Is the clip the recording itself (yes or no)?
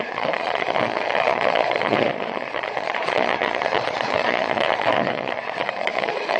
no